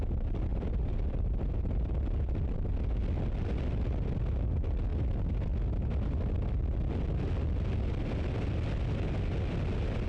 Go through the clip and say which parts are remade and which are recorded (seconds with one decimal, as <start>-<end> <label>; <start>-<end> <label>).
0.0-0.5 recorded; 0.5-2.3 remade; 2.3-10.1 recorded